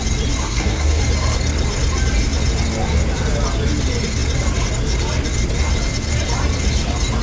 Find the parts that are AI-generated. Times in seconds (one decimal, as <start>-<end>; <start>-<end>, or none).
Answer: 0.4-1.0